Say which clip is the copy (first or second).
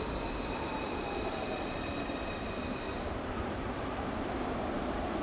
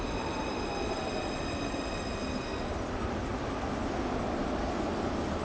first